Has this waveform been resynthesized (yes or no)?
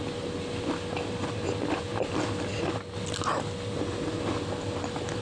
no